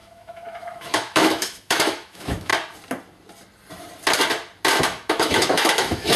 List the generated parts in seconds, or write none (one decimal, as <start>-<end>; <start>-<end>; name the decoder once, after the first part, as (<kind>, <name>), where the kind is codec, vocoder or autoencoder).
0.0-2.5 (autoencoder, DAC-VAE); 4.7-6.2